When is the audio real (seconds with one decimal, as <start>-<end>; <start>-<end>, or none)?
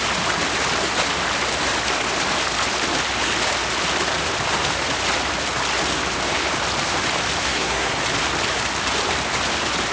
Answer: 0.0-7.4; 8.0-9.9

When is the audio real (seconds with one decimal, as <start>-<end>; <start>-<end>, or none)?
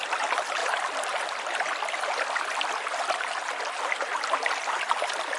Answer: 0.0-5.4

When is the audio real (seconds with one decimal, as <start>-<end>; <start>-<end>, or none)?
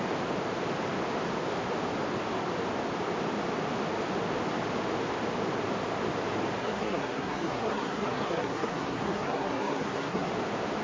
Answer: 0.0-6.6; 10.3-10.8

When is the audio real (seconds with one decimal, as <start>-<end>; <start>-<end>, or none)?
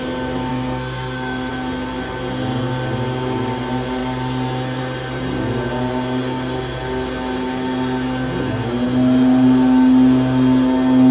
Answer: 0.0-0.5; 1.5-11.1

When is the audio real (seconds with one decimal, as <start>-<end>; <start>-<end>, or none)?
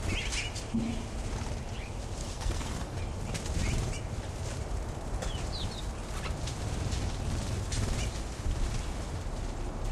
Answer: 0.0-2.2; 3.0-9.9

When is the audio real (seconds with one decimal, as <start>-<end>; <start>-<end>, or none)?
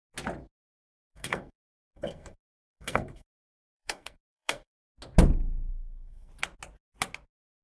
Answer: 0.0-0.9; 4.9-5.7; 6.3-7.6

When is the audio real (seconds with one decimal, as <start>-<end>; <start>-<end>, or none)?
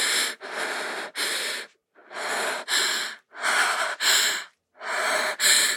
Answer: 0.0-5.8